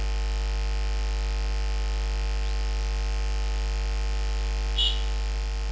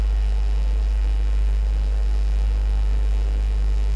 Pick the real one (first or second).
first